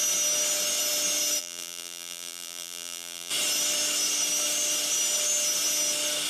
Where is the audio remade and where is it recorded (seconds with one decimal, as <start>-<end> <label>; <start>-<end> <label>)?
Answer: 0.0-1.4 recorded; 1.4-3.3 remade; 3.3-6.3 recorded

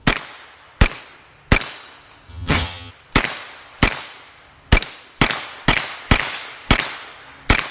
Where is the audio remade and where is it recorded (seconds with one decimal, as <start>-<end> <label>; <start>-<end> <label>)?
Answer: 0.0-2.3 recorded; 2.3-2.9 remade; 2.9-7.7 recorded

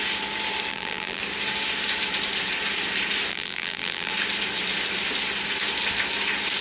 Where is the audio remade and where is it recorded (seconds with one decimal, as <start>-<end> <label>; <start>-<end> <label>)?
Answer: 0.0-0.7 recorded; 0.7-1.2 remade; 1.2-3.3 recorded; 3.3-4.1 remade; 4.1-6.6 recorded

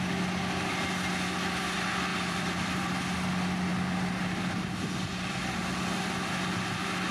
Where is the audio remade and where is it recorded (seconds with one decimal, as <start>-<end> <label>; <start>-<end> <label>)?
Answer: 0.0-2.1 recorded; 2.1-2.9 remade; 2.9-7.1 recorded

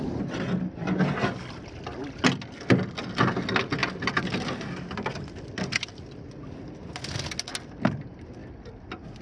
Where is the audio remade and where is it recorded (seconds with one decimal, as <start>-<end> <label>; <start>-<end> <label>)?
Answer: 0.0-9.2 recorded

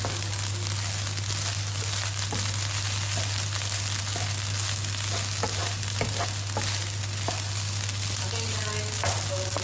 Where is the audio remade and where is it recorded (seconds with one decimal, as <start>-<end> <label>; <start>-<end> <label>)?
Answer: 0.0-9.6 recorded

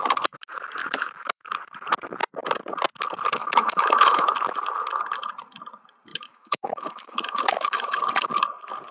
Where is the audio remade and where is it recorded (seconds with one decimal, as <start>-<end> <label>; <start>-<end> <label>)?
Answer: 0.0-0.8 recorded; 0.8-1.5 remade; 1.5-3.4 recorded; 3.4-4.3 remade; 4.3-6.1 recorded; 6.1-8.0 remade; 8.0-8.9 recorded